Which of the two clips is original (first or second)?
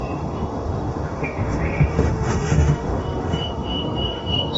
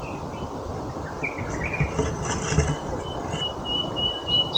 second